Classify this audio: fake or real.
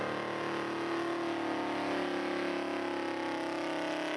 real